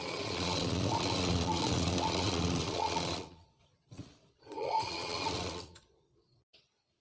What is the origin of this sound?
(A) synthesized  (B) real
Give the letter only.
A